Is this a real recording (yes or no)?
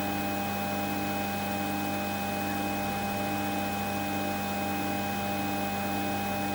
yes